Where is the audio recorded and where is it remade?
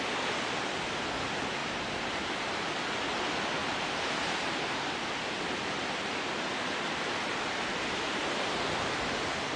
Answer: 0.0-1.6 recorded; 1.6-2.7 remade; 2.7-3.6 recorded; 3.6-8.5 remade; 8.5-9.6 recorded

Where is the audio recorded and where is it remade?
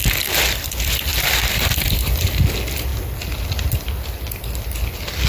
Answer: 0.0-1.1 recorded; 1.1-2.4 remade; 2.4-5.3 recorded